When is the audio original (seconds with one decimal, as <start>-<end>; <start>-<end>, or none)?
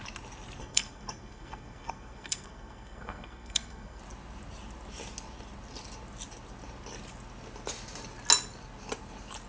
0.0-0.6; 4.0-9.5